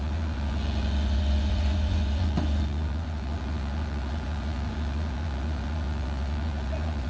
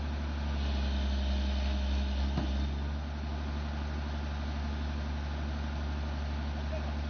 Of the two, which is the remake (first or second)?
first